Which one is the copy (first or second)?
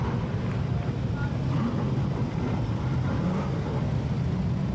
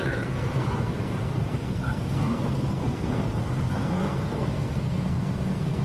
second